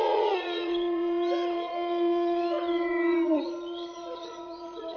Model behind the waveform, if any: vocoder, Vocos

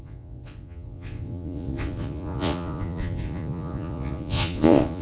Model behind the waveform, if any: vocoder, Vocos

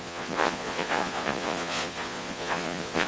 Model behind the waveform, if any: vocoder, Vocos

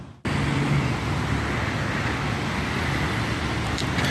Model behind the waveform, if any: none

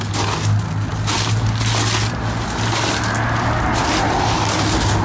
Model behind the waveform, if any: none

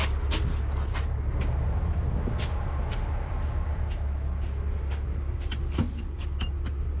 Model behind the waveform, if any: none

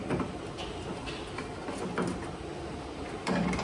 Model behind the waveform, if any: none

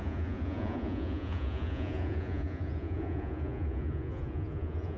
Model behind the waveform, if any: vocoder, Vocos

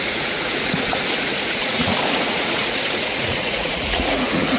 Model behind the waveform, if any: vocoder, Vocos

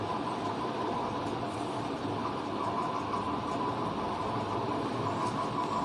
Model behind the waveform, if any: none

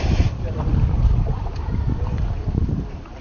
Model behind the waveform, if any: none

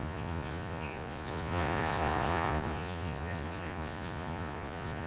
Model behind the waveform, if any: vocoder, Vocos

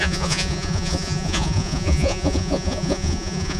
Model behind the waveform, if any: vocoder, Vocos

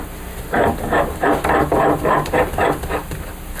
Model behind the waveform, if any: none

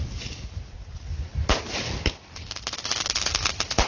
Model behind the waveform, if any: none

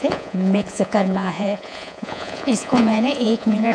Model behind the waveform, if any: vocoder, Vocos